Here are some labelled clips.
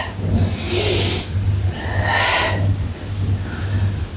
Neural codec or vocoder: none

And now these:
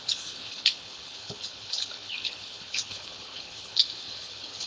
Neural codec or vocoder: codec, HILCodec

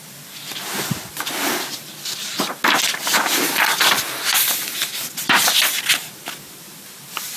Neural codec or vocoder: none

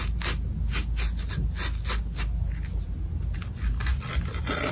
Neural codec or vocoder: none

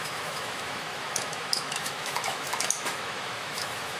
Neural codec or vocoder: autoencoder, DAC-VAE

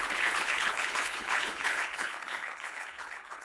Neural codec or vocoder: codec, HILCodec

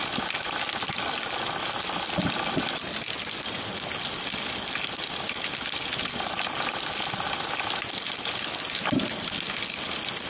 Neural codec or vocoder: none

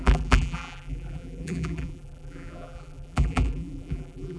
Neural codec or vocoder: vocoder, BigVGAN v2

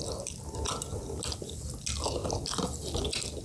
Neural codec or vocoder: none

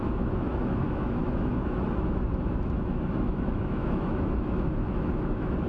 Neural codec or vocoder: autoencoder, DAC-VAE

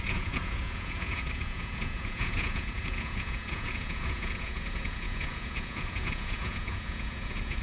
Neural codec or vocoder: vocoder, Vocos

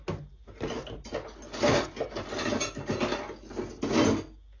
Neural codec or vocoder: none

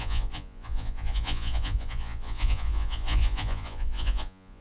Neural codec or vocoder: vocoder, Vocos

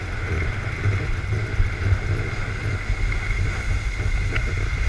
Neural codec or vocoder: none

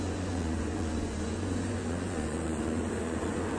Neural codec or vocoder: vocoder, Vocos